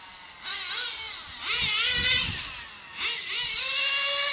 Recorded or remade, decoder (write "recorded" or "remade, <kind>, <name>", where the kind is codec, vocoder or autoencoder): recorded